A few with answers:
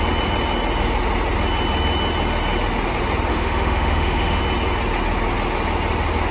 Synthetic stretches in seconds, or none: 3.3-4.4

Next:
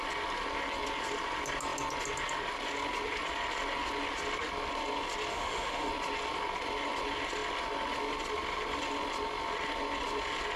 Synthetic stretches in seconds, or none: 5.3-5.9